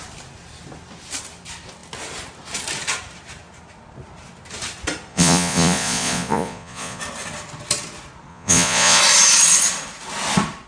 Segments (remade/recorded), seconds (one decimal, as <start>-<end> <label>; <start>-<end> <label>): 0.0-5.1 recorded; 5.1-7.0 remade; 7.0-8.3 recorded; 8.3-9.0 remade; 9.0-10.7 recorded